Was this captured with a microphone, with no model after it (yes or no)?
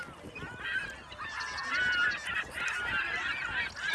yes